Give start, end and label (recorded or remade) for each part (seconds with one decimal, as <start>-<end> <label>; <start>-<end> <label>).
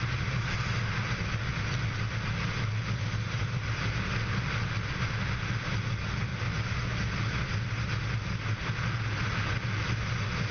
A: 0.0-10.5 recorded